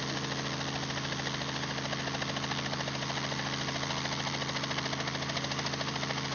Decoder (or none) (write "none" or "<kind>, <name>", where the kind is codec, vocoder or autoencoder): none